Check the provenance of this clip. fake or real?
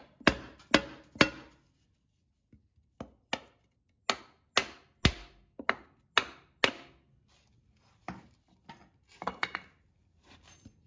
real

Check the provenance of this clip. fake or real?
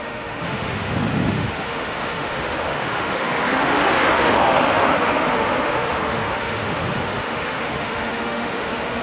fake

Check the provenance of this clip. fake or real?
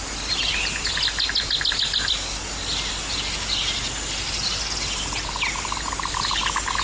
real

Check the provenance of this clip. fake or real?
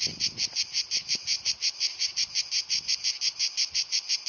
fake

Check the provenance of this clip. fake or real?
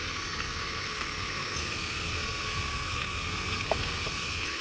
fake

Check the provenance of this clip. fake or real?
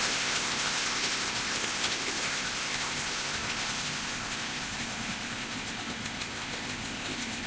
fake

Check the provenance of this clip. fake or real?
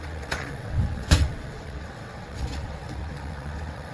fake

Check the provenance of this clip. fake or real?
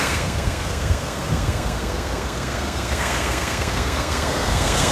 fake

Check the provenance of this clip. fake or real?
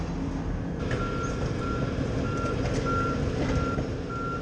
real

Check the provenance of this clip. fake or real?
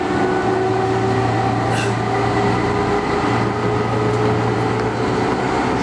real